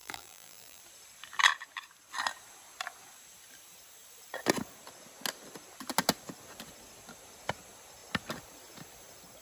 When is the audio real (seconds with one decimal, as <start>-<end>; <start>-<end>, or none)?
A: 0.8-9.4